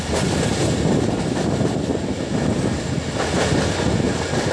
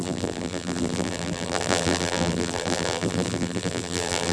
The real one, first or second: first